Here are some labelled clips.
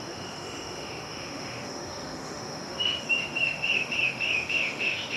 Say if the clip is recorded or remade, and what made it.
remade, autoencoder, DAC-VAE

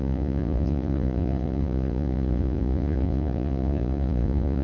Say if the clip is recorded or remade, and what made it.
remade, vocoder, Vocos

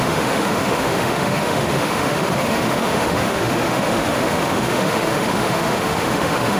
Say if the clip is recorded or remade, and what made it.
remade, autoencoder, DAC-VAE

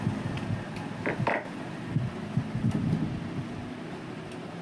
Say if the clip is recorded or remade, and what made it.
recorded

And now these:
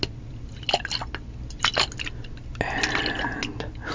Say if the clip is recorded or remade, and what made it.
recorded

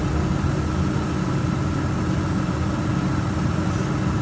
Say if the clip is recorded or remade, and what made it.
recorded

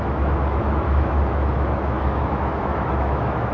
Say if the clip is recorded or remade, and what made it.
remade, autoencoder, DAC-VAE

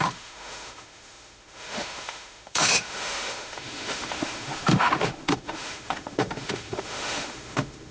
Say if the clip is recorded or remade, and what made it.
remade, autoencoder, DAC-VAE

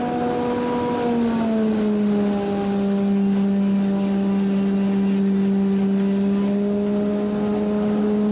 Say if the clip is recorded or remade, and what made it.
recorded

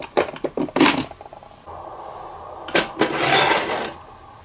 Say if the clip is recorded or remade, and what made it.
recorded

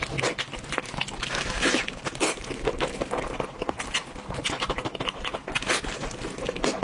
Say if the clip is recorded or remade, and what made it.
recorded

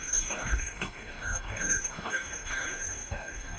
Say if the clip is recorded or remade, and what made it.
remade, codec, DAC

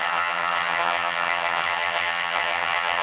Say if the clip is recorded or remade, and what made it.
remade, vocoder, HiFi-GAN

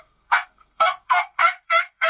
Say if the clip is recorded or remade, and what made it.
remade, codec, SNAC